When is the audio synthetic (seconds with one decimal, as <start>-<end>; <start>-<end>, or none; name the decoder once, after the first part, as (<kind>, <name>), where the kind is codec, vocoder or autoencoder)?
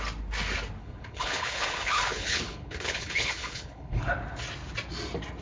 0.8-4.0 (codec, HILCodec)